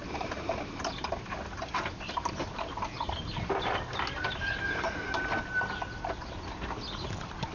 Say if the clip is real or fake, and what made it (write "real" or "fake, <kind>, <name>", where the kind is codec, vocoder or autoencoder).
real